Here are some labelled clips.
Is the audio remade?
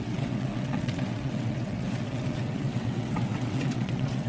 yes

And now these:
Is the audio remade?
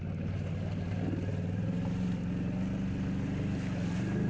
no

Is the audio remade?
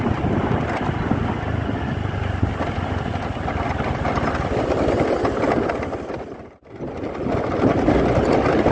no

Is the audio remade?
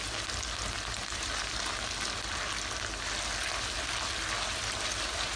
no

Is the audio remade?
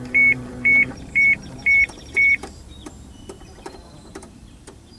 yes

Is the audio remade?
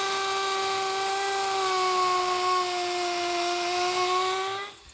no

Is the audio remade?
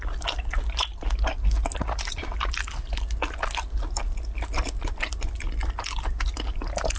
no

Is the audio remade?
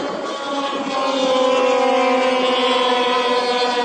no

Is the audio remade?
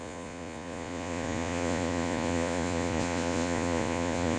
yes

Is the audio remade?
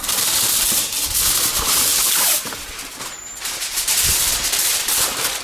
yes